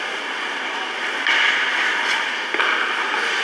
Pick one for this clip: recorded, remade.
recorded